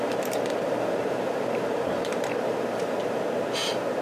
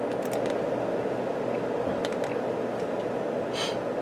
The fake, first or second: first